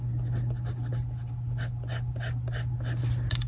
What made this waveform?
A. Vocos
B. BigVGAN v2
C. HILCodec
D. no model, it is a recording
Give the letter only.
D